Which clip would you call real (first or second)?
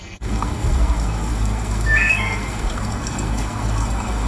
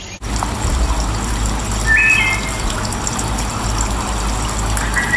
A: second